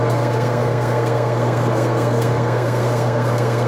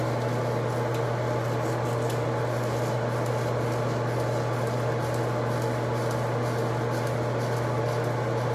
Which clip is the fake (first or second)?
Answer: first